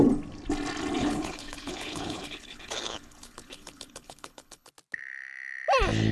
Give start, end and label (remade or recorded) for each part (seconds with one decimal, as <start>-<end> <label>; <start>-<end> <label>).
0.0-1.0 recorded; 1.0-4.7 remade; 4.7-6.1 recorded

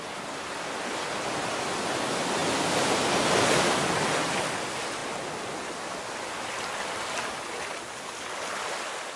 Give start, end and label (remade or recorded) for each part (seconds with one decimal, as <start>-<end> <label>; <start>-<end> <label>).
0.0-9.2 recorded

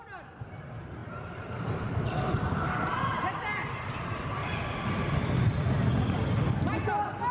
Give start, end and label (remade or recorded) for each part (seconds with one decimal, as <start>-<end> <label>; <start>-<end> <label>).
0.0-1.0 recorded; 1.0-1.8 remade; 1.8-4.4 recorded; 4.4-5.0 remade; 5.0-7.3 recorded

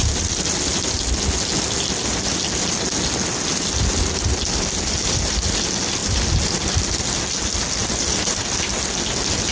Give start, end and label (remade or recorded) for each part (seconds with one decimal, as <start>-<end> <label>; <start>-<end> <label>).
0.0-7.8 recorded; 7.8-8.4 remade; 8.4-9.5 recorded

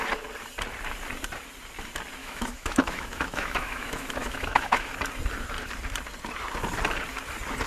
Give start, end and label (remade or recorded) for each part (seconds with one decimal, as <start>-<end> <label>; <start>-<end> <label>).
0.0-2.2 recorded; 2.2-4.9 remade; 4.9-7.7 recorded

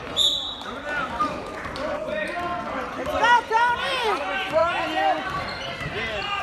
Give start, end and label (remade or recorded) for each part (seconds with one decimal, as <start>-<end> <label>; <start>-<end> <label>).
0.0-6.4 recorded